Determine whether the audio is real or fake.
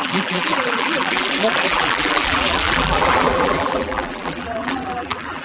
fake